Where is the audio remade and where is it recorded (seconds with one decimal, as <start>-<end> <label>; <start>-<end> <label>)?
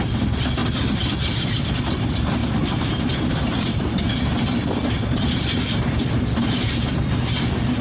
0.0-2.4 recorded; 2.4-4.7 remade; 4.7-6.4 recorded; 6.4-7.1 remade; 7.1-7.8 recorded